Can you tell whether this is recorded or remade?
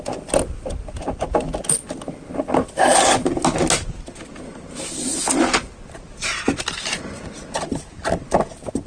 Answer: recorded